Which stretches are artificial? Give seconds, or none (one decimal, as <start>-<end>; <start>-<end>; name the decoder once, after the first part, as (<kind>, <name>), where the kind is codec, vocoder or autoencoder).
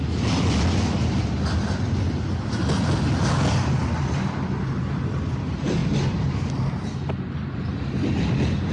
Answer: none